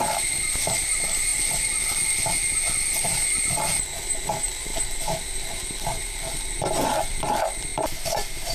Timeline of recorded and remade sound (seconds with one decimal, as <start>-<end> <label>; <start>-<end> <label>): 0.0-8.5 recorded